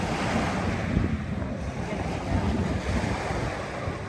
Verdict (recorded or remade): recorded